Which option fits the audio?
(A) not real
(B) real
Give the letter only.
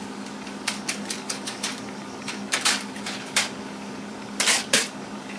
A